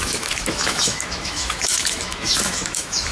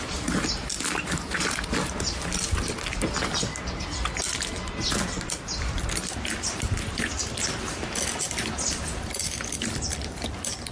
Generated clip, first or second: first